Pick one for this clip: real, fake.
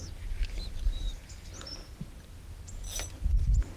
real